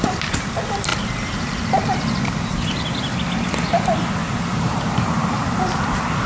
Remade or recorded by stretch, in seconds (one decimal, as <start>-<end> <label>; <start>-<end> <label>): 0.0-0.9 recorded; 0.9-1.5 remade; 1.5-4.2 recorded; 4.2-6.3 remade